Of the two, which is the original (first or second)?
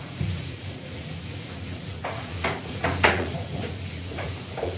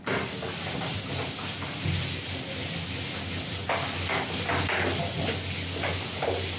second